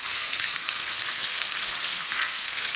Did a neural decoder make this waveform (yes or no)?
yes